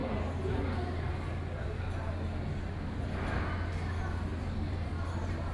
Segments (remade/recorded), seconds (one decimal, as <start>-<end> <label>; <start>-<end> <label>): 0.0-4.3 recorded; 4.3-4.9 remade; 4.9-5.5 recorded